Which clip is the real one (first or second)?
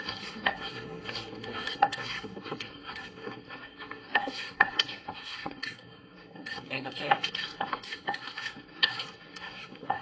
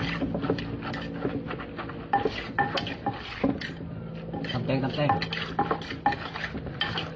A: second